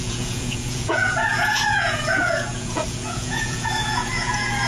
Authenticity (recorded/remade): remade